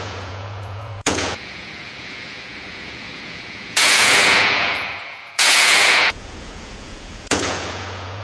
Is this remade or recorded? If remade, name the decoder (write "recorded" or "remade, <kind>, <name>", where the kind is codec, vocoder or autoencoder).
remade, vocoder, Vocos